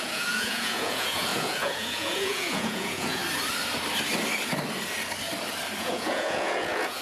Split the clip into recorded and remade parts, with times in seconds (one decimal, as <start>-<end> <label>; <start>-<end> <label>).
0.0-3.2 remade; 3.2-5.8 recorded; 5.8-7.0 remade